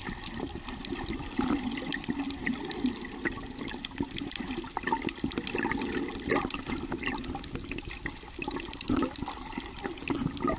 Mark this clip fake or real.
real